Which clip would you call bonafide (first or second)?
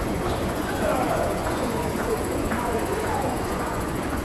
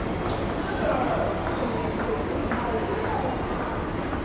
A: second